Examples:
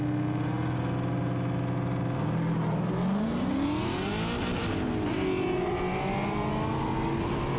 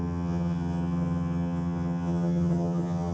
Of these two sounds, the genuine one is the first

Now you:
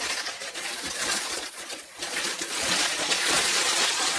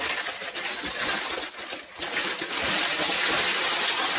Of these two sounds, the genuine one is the second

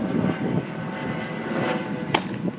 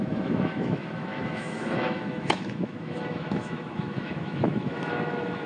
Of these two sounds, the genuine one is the first